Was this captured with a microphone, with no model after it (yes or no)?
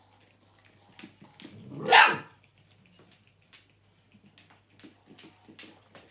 yes